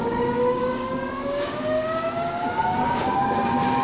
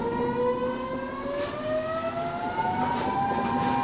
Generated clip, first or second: first